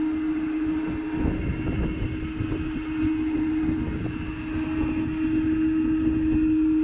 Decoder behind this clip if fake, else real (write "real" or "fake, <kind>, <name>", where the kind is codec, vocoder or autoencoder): real